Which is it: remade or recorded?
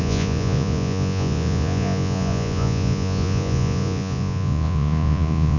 remade